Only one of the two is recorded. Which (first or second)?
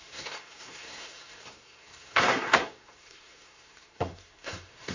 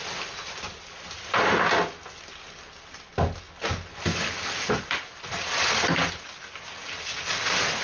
second